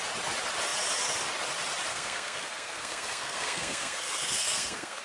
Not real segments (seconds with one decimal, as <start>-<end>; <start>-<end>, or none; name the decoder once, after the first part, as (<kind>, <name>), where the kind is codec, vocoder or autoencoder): 1.9-5.0 (codec, SNAC)